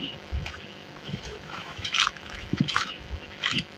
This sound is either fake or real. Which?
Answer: fake